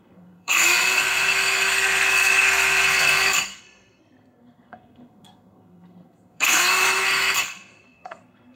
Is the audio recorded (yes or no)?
no